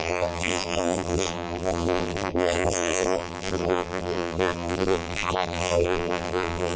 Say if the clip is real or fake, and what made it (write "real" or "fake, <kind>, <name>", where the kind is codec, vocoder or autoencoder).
fake, vocoder, BigVGAN v2